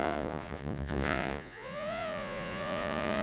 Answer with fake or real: fake